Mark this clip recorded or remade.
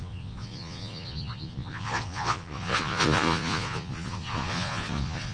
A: remade